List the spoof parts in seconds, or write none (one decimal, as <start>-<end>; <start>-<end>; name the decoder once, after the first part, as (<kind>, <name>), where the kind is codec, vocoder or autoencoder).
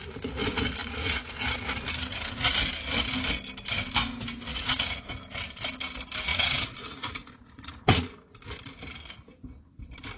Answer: 0.8-1.4 (vocoder, Vocos); 4.5-5.1; 6.3-8.1